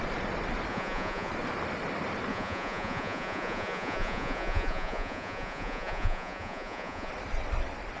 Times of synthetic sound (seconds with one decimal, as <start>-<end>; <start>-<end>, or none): 0.7-1.3; 2.3-7.1

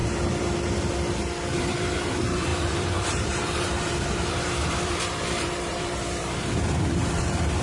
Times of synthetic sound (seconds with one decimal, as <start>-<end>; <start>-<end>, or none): 1.6-7.6

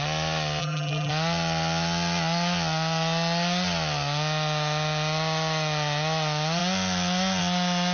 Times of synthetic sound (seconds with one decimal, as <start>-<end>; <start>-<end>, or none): 0.6-1.1

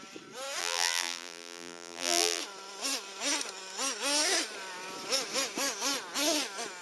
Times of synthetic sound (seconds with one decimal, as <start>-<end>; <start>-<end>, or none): 0.6-2.4